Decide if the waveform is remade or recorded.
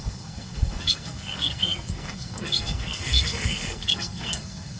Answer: remade